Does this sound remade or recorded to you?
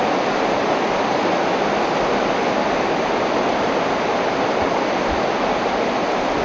recorded